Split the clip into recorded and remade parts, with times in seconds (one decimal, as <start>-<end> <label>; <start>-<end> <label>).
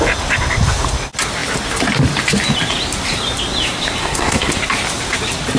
0.0-4.0 recorded; 4.0-4.5 remade; 4.5-5.6 recorded